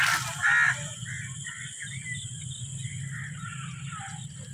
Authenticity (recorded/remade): recorded